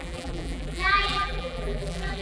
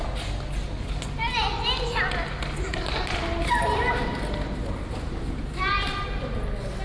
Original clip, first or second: second